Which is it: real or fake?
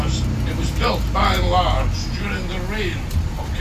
real